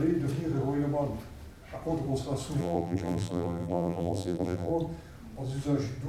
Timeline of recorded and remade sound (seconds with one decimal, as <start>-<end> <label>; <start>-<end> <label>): 0.0-2.6 recorded; 2.6-4.7 remade; 4.7-6.1 recorded